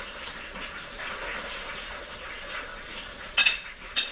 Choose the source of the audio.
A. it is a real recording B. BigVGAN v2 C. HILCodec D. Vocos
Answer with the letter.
D